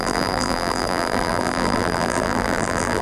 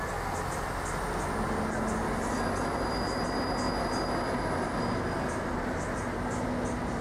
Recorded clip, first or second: second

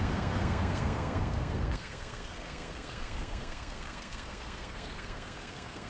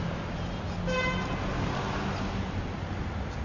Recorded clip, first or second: second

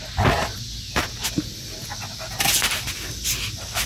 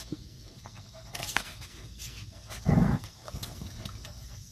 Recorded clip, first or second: first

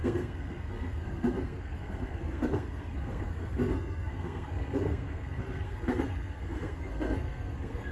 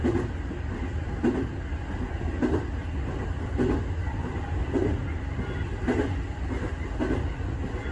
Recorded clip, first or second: second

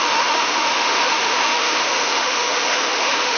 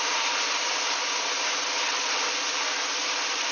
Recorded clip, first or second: second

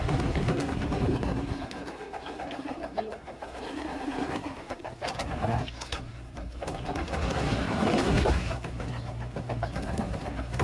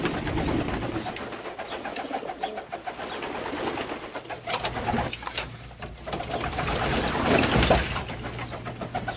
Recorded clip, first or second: second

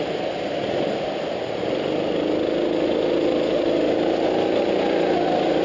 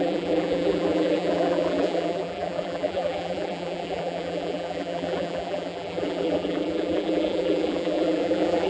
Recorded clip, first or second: first